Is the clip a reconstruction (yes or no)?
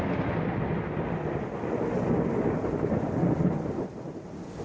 no